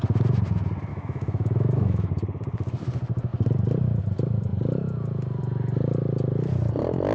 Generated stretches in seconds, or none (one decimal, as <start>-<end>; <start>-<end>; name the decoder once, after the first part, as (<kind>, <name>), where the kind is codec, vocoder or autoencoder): 0.9-2.1 (autoencoder, DAC-VAE)